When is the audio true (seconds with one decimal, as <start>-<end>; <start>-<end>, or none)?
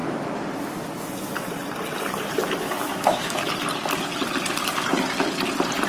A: 0.0-2.3; 3.5-5.9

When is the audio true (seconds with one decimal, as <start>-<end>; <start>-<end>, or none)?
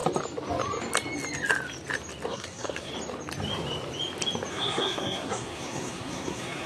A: 0.0-2.3; 2.9-4.5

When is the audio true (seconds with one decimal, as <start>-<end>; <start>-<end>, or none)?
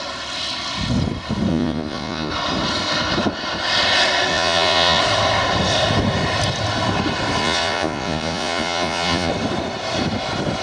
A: 0.0-1.5; 2.3-4.3; 5.0-7.4; 9.3-10.6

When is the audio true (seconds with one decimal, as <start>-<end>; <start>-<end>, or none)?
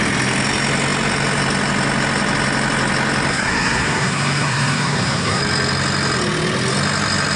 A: 0.0-3.3; 5.4-7.4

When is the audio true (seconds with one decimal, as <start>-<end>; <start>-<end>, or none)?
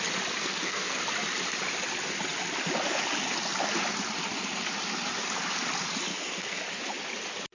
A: 0.0-0.4; 1.0-6.1; 6.6-7.5